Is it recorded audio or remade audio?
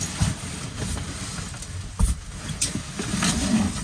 recorded